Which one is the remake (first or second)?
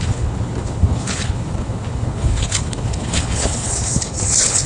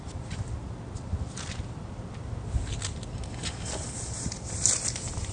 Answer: first